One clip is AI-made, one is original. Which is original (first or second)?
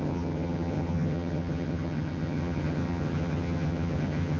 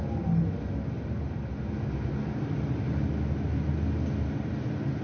second